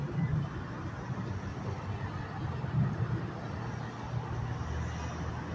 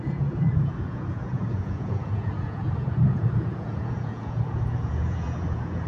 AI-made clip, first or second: second